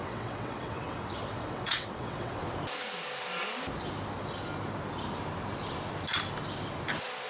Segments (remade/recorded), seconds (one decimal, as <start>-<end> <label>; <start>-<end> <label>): 0.0-2.4 remade; 2.4-7.3 recorded